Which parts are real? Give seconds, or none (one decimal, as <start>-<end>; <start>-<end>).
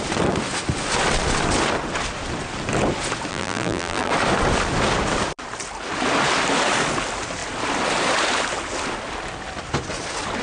0.0-3.3; 4.1-10.4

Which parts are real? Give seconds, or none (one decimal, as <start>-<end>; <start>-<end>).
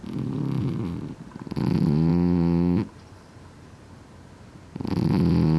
1.6-5.6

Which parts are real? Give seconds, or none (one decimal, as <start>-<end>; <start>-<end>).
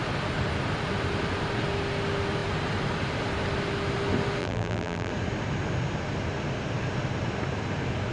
0.0-4.4; 5.1-8.1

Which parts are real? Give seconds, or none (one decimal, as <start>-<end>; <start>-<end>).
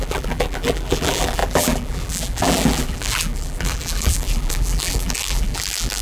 none